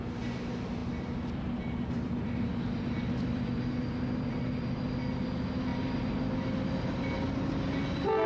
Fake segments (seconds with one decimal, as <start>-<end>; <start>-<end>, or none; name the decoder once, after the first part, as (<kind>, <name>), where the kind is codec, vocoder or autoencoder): none